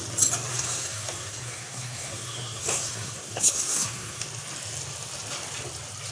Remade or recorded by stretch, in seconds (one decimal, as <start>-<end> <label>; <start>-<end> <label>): 0.0-0.5 recorded; 0.5-4.2 remade; 4.2-6.1 recorded